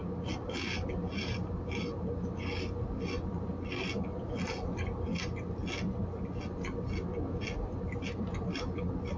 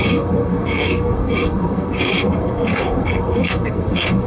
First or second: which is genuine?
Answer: first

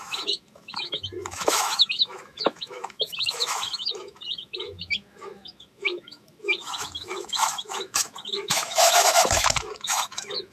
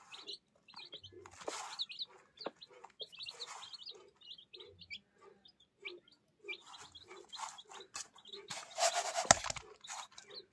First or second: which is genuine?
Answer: second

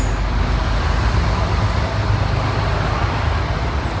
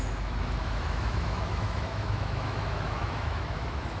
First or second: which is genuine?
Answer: first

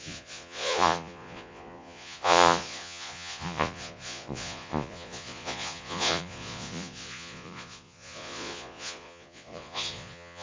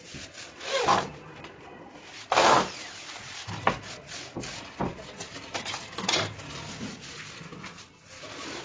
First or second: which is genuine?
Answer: second